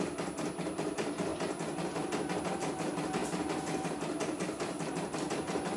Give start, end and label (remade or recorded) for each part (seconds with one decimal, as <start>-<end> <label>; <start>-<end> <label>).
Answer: 0.0-5.8 recorded